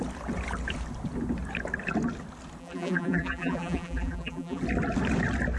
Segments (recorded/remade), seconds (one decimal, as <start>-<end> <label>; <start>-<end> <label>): 0.0-2.6 recorded; 2.6-4.6 remade; 4.6-5.6 recorded